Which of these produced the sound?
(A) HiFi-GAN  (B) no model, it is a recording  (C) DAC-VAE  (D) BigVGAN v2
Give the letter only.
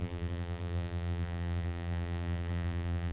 D